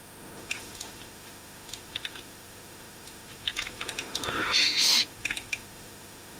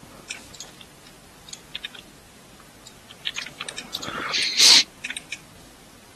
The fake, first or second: first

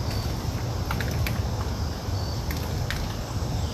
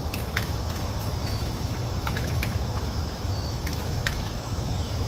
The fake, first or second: second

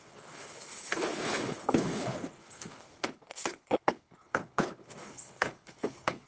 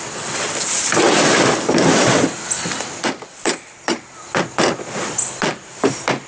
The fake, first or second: first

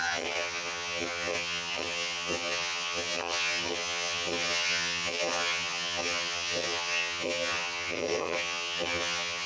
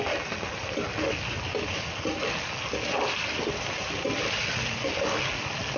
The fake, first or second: first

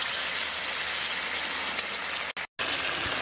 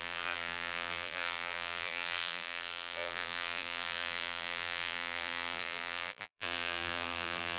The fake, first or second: second